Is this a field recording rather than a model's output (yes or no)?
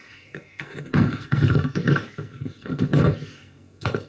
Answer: no